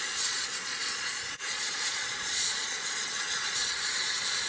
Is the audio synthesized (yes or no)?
yes